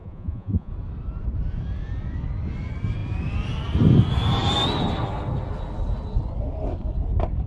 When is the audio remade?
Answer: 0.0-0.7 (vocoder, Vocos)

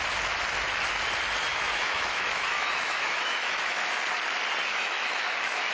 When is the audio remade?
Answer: 1.5-4.0 (autoencoder, DAC-VAE); 4.7-5.7

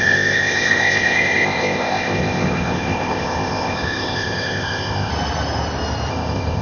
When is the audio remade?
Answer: 0.0-5.1 (codec, ZipCodec); 6.1-6.6

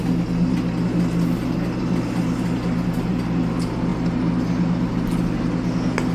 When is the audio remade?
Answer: none

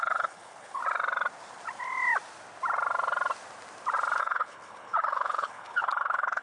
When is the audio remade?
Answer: 0.0-0.8 (codec, HILCodec); 4.2-6.4

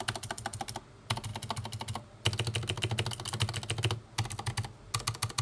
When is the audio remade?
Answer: none